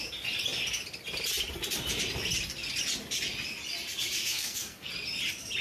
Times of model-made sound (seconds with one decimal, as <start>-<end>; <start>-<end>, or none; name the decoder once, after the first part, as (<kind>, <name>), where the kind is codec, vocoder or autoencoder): 4.2-4.9 (codec, SNAC)